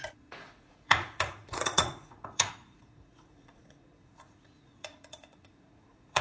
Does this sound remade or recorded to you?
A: remade